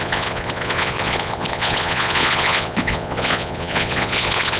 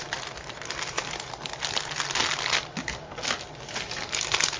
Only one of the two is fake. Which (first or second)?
first